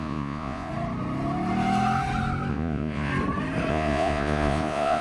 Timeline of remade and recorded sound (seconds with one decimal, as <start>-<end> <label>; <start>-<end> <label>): 0.0-0.7 remade; 0.7-2.5 recorded; 2.5-3.1 remade; 3.1-3.7 recorded; 3.7-5.0 remade